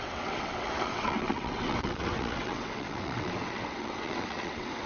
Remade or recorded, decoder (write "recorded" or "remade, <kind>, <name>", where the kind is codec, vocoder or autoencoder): remade, vocoder, WaveNeXt